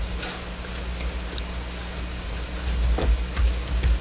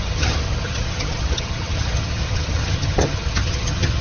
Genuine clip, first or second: first